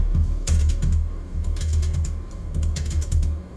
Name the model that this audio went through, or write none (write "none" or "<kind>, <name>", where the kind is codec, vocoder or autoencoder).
codec, DAC